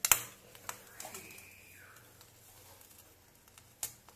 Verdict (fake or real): real